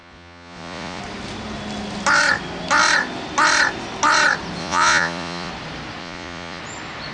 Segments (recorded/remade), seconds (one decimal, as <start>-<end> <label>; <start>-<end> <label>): 0.0-1.0 remade; 1.0-4.6 recorded; 4.6-5.5 remade; 5.5-6.0 recorded; 6.0-6.6 remade; 6.6-7.1 recorded

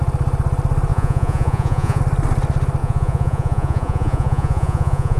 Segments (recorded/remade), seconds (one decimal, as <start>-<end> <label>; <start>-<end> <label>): 0.0-0.9 recorded; 0.9-2.0 remade; 2.0-2.8 recorded; 2.8-5.2 remade

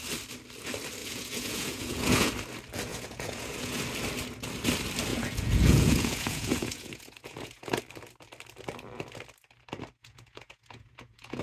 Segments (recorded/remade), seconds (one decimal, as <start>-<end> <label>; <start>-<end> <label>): 0.0-1.0 recorded; 1.0-2.3 remade; 2.3-2.9 recorded; 2.9-3.8 remade; 3.8-5.1 recorded; 5.1-7.8 remade; 7.8-10.0 recorded; 10.0-11.4 remade